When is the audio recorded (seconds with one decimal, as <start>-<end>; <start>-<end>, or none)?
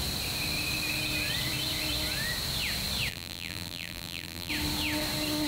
0.0-3.1; 4.5-5.5